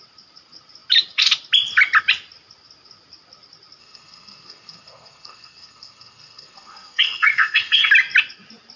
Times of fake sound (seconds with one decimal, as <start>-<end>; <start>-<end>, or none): 3.8-7.9